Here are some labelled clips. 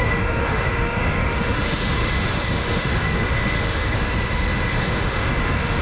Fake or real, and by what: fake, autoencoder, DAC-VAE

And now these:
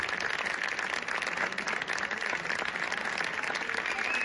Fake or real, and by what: real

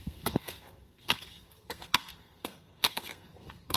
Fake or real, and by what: fake, codec, SNAC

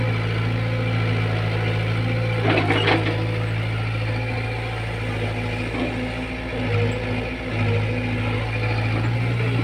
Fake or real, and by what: real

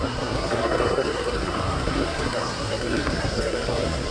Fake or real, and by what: fake, codec, SNAC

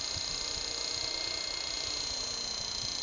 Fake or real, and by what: real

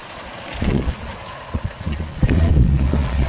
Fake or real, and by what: fake, vocoder, Vocos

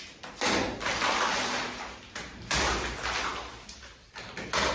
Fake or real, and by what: real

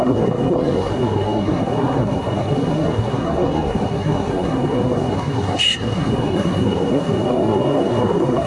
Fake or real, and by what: fake, codec, SNAC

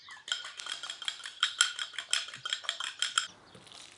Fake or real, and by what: real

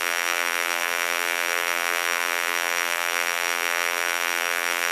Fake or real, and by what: fake, vocoder, BigVGAN v2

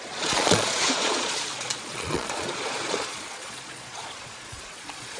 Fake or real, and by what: fake, vocoder, Vocos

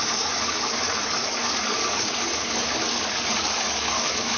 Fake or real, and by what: fake, codec, DAC